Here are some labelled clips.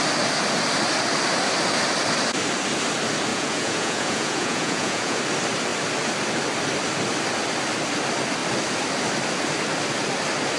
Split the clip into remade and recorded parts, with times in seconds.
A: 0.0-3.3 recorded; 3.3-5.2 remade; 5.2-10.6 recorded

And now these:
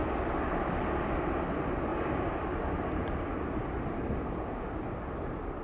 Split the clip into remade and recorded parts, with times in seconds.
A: 0.0-5.6 recorded